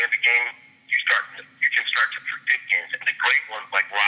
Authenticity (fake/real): real